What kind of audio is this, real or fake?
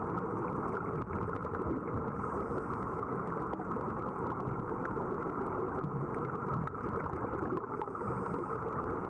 real